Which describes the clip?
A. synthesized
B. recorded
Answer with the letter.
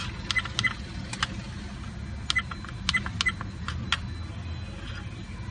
B